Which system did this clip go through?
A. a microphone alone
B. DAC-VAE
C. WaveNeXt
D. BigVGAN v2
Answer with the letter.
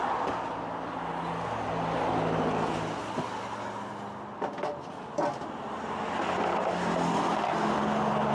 A